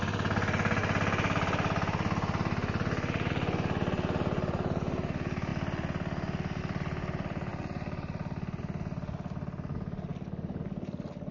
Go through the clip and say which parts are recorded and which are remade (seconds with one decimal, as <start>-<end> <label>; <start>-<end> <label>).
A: 0.0-11.3 recorded